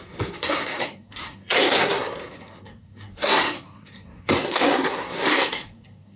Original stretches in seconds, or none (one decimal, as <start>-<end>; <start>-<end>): none

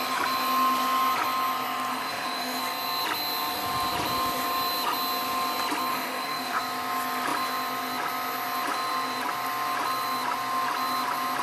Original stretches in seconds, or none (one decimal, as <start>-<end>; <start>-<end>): 0.0-1.9; 2.6-5.9; 6.6-11.4

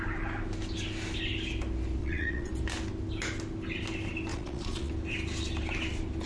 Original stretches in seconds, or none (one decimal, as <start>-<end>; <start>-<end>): 0.0-2.0; 2.5-4.3; 4.9-6.3

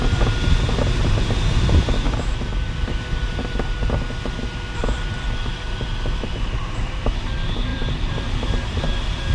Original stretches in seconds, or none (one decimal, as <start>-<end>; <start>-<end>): 0.0-2.5; 3.0-7.7; 8.8-9.3

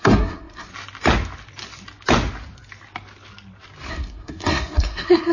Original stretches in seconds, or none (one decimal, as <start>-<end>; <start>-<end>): 0.7-3.9

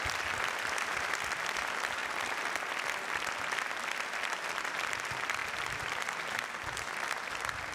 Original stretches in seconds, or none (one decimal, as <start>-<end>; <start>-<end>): 0.0-7.7

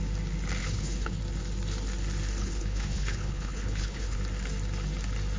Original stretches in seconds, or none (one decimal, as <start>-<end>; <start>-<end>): 0.0-0.6; 1.2-2.4; 4.2-5.4